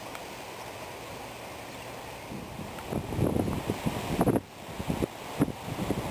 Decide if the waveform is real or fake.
real